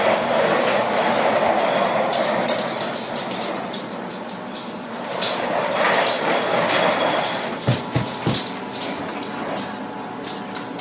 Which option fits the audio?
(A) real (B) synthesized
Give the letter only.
A